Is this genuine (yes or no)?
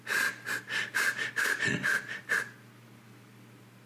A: yes